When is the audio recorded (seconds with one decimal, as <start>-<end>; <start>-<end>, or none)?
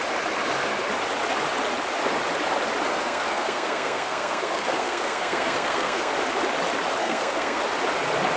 0.0-2.9; 6.1-7.0; 7.6-8.4